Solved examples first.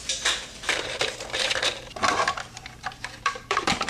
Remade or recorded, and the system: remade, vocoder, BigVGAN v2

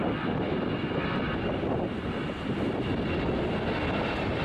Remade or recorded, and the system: recorded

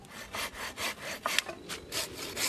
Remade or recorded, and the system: recorded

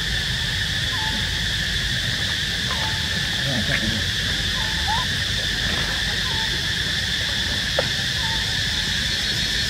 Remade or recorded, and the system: remade, vocoder, BigVGAN v2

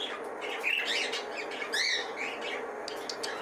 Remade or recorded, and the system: recorded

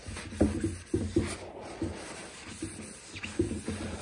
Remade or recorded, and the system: recorded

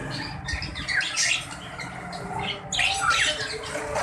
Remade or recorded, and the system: recorded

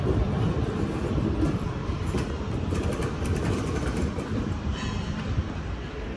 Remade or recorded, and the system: remade, vocoder, BigVGAN v2